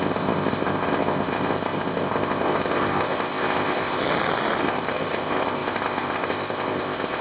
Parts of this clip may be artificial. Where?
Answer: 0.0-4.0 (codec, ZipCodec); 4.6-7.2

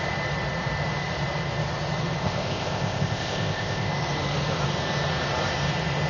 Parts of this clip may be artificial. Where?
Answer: 2.2-3.9 (codec, ZipCodec)

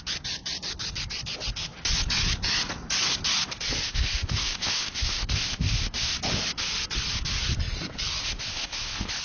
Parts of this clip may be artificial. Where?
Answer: 3.8-6.1 (codec, ZipCodec); 8.2-9.2

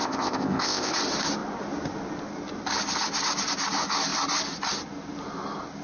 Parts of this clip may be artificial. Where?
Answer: 0.0-0.9 (codec, ZipCodec)

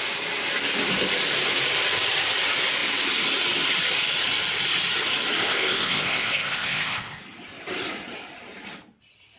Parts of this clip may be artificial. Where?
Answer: 5.4-7.2 (codec, ZipCodec)